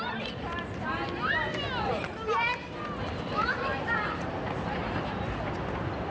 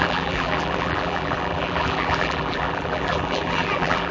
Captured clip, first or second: first